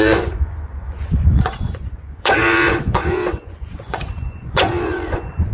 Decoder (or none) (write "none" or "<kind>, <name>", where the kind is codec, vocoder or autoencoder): vocoder, Vocos